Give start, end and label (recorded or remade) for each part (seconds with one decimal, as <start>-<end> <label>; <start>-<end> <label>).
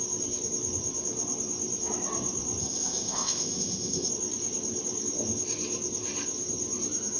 0.0-2.6 recorded; 2.6-4.1 remade; 4.1-7.2 recorded